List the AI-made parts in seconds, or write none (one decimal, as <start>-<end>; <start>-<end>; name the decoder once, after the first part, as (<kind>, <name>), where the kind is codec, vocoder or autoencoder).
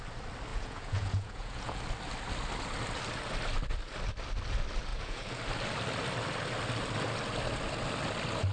0.5-1.8 (vocoder, Vocos); 4.9-5.4